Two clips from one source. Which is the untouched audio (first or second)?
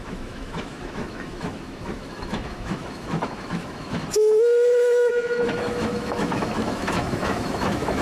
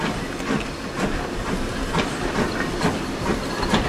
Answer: second